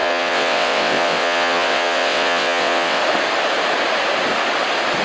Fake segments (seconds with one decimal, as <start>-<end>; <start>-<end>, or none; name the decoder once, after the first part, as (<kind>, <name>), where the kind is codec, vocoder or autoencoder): 0.0-3.0 (vocoder, WaveNeXt)